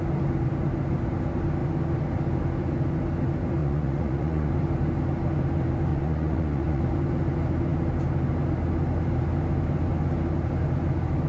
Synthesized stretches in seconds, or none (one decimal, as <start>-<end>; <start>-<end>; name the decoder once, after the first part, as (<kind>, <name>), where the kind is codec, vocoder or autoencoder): 3.6-4.5 (vocoder, Vocos); 5.9-6.8